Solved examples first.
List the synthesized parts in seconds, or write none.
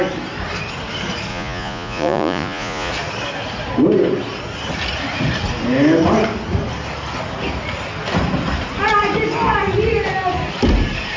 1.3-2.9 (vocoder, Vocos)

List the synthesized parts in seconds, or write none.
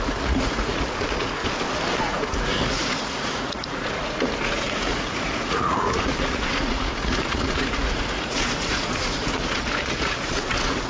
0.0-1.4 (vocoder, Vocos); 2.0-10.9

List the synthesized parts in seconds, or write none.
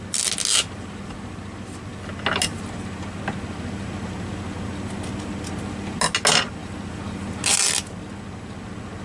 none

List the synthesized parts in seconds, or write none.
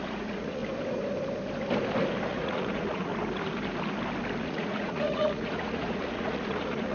0.0-0.6 (vocoder, Vocos); 2.3-3.1; 4.4-6.9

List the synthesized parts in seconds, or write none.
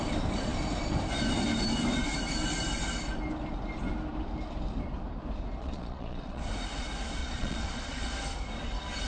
5.6-6.4 (vocoder, Vocos); 7.2-8.1